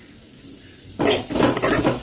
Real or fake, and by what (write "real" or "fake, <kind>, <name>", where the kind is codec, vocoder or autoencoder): real